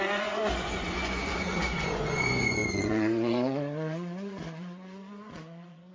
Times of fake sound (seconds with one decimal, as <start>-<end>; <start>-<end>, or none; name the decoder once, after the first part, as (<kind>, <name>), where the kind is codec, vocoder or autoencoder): 0.0-5.9 (vocoder, Vocos)